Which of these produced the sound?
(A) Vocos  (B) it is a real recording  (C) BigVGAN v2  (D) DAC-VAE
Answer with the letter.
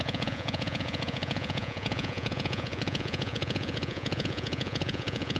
A